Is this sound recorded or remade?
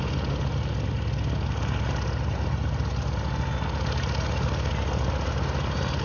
recorded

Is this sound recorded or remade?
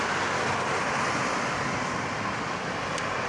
recorded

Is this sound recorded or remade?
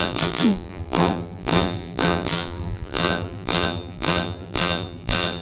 remade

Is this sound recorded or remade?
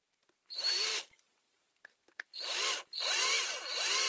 remade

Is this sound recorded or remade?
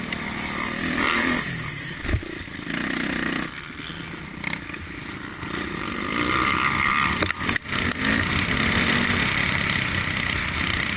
remade